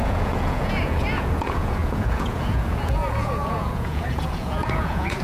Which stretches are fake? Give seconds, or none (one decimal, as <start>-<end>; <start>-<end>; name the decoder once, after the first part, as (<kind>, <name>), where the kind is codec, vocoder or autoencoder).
0.0-5.2 (vocoder, Vocos)